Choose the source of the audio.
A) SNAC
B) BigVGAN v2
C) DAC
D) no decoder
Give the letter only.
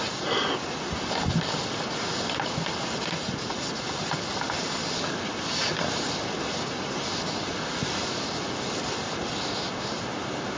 D